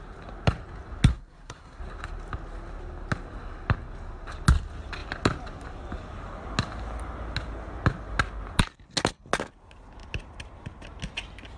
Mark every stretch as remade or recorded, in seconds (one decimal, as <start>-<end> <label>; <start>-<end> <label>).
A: 0.0-1.1 recorded; 1.1-1.8 remade; 1.8-11.6 recorded